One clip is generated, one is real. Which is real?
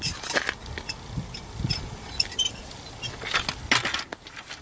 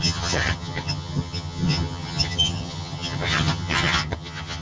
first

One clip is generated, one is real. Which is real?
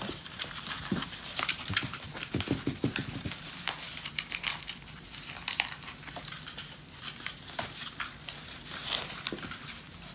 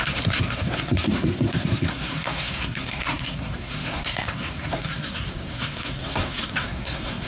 first